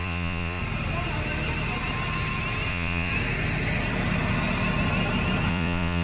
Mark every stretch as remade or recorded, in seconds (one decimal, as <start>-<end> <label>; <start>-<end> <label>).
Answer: 0.0-0.6 remade; 0.6-2.7 recorded; 2.7-3.1 remade; 3.1-5.5 recorded; 5.5-6.0 remade